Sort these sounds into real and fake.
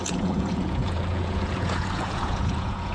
fake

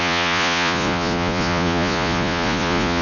fake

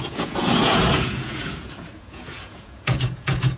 fake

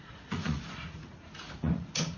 fake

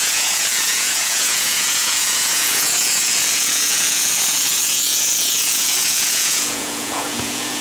fake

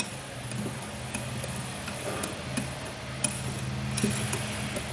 real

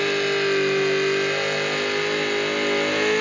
real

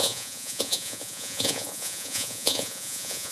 fake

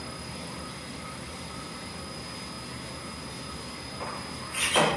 real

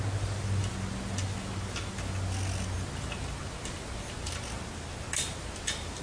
real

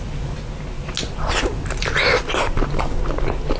real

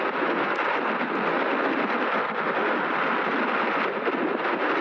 real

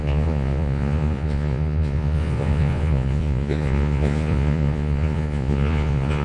fake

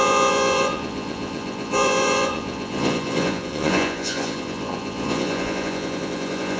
fake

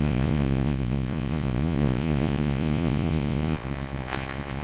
fake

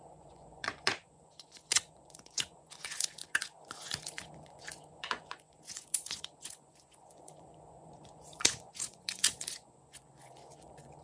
fake